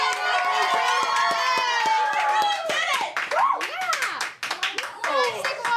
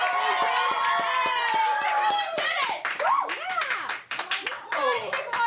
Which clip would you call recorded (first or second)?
first